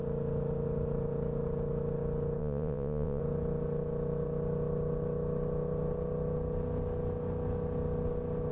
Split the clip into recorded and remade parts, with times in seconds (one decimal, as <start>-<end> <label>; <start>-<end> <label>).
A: 0.0-2.4 recorded; 2.4-3.2 remade; 3.2-8.5 recorded

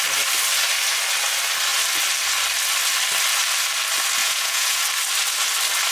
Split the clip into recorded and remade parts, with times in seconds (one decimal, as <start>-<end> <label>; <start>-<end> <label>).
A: 0.0-4.2 recorded; 4.2-4.8 remade; 4.8-5.9 recorded

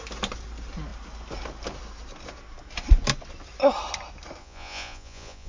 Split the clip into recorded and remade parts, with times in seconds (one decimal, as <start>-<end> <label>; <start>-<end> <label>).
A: 0.0-4.4 recorded; 4.4-5.5 remade

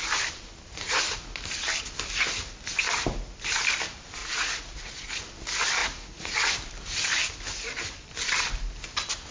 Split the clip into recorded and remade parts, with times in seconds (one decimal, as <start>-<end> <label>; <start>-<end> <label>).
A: 0.0-4.2 recorded; 4.2-4.9 remade; 4.9-5.8 recorded; 5.8-6.5 remade; 6.5-9.3 recorded

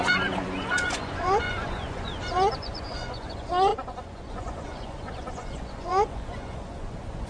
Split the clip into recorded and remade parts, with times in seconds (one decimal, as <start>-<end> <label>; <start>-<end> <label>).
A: 0.0-7.3 remade

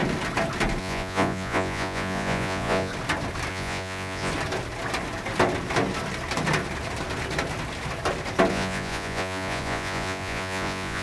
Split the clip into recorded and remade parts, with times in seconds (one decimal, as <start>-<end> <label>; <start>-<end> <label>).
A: 0.0-0.8 recorded; 0.8-2.9 remade; 2.9-3.5 recorded; 3.5-4.3 remade; 4.3-8.5 recorded; 8.5-11.0 remade